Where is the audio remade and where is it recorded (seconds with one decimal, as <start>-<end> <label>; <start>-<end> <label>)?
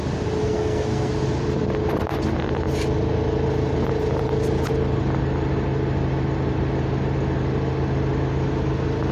0.0-0.4 recorded; 0.4-1.1 remade; 1.1-9.1 recorded